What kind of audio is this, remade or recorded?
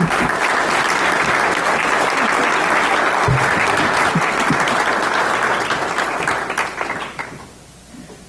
recorded